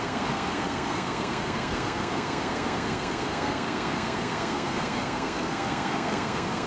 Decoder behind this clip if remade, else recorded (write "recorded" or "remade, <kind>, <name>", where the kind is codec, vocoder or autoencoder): remade, codec, SNAC